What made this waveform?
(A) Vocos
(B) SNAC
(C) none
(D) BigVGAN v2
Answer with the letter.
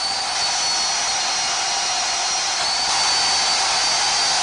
C